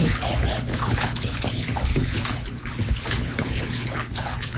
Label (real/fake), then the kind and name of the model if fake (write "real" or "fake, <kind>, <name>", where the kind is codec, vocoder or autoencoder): fake, codec, HILCodec